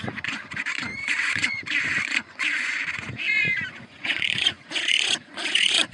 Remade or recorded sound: remade